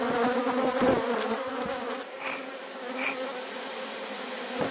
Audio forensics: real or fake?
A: real